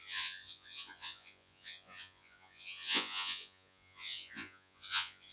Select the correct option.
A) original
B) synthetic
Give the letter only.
B